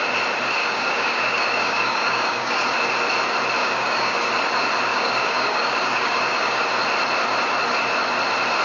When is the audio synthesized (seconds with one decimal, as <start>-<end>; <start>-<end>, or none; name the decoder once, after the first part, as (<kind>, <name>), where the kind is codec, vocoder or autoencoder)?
0.6-2.7 (codec, DAC); 3.6-4.3; 4.9-6.6